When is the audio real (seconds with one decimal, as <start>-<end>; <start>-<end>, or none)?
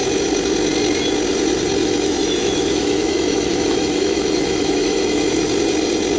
0.0-1.8; 5.5-6.2